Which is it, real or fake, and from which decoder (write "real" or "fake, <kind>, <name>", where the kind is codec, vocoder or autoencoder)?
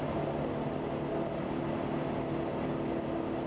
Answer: real